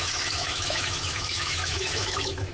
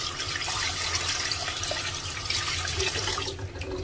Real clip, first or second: second